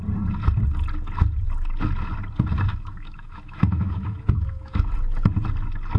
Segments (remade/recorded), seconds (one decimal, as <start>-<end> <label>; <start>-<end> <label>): 0.0-2.7 recorded; 2.7-4.9 remade; 4.9-6.0 recorded